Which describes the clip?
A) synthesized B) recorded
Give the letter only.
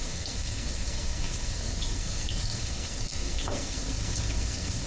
A